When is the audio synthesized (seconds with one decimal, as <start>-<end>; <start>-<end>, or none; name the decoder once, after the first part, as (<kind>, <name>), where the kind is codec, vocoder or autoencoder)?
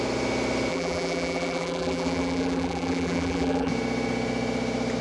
0.7-3.7 (vocoder, BigVGAN v2)